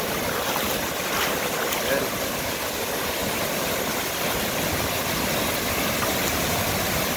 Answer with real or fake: real